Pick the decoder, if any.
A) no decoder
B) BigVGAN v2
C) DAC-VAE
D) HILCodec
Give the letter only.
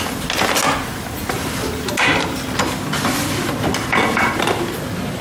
A